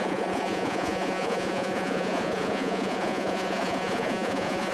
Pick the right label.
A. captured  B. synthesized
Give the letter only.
B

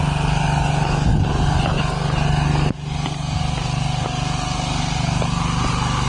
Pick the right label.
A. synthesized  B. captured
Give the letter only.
B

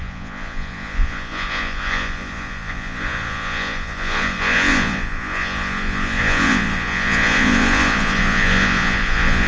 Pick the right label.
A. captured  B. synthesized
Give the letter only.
B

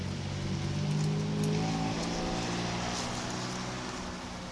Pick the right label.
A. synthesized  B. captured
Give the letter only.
B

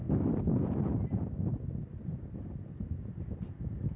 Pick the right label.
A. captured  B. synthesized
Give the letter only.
A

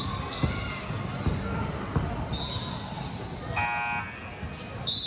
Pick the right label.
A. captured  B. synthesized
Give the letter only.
A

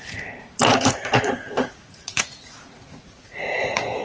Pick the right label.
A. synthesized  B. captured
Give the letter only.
A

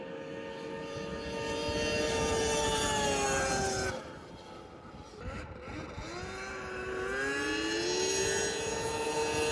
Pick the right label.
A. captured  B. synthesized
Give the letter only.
A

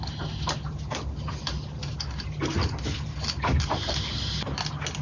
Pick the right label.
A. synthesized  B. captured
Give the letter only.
B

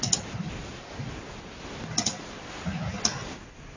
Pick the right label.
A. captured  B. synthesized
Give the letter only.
A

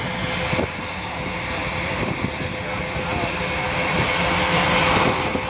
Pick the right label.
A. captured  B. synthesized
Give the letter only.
A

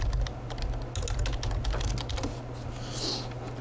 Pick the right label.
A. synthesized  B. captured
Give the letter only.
B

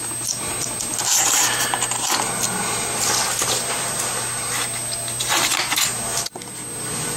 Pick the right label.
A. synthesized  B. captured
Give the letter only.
B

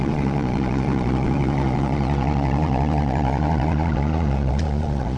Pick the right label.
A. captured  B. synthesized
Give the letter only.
B